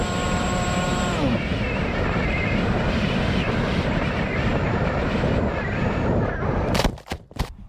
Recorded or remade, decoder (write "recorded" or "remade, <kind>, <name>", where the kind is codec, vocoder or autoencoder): remade, vocoder, BigVGAN v2